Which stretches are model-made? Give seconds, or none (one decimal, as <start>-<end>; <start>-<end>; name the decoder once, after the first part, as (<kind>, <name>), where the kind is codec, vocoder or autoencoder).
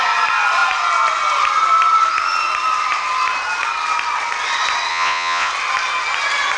4.9-5.5 (vocoder, Vocos)